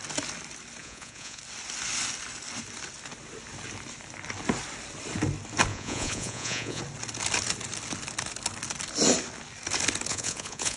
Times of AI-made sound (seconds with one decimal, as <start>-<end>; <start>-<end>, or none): 0.8-1.4; 5.7-6.8; 10.1-10.8